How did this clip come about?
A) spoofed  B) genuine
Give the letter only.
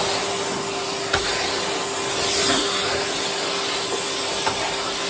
B